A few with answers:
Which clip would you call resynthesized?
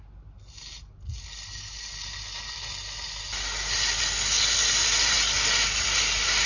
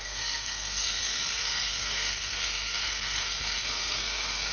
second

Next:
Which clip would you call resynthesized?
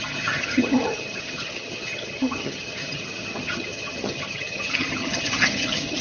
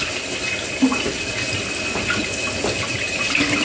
first